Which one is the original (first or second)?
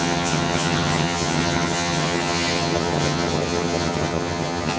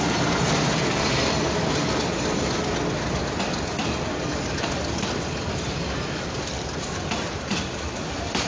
second